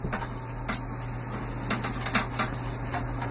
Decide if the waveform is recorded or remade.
recorded